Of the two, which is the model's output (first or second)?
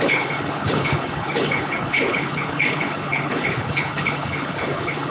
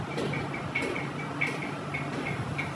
first